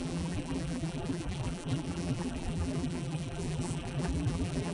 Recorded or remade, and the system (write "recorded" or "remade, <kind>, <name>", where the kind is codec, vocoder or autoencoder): remade, vocoder, BigVGAN v2